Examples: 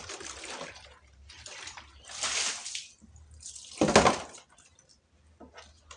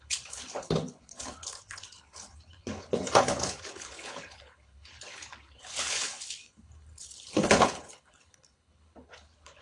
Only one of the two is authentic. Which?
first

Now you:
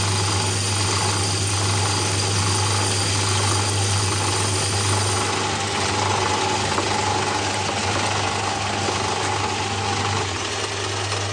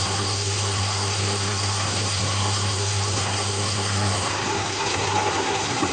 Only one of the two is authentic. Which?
first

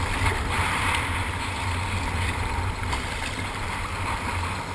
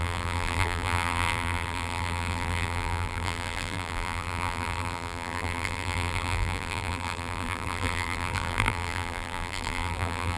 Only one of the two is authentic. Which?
first